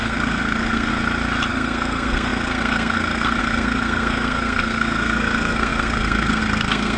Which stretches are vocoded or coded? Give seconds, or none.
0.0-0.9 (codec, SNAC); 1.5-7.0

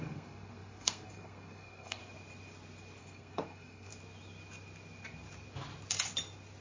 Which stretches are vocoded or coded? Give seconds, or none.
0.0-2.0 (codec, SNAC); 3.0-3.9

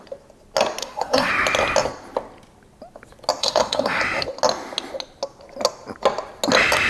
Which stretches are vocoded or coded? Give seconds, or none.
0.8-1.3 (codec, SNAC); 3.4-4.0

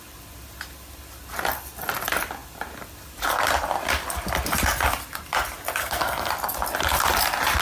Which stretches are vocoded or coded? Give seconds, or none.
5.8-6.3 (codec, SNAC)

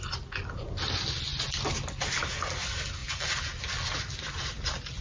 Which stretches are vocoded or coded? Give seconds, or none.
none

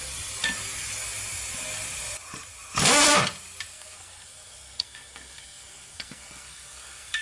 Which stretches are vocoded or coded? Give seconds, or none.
3.7-7.2 (codec, SNAC)

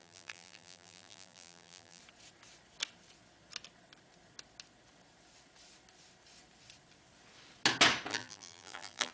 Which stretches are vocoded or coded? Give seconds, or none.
0.0-2.0 (vocoder, BigVGAN v2); 8.1-9.1

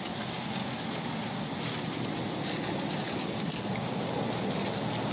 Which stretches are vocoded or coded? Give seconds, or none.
0.6-1.1 (autoencoder, DAC-VAE)